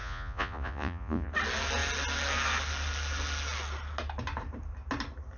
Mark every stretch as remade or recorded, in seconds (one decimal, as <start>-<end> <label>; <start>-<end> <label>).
0.0-1.3 remade; 1.3-5.4 recorded